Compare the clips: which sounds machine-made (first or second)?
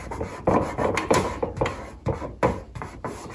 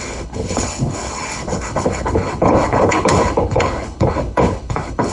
second